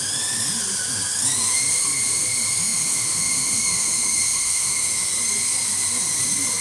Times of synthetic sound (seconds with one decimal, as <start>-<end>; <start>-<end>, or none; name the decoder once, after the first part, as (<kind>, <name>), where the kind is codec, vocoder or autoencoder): 2.6-5.1 (autoencoder, DAC-VAE)